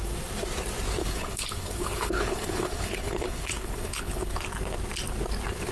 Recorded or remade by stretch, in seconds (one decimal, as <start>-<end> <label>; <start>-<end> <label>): 0.0-1.0 recorded; 1.0-4.4 remade; 4.4-5.7 recorded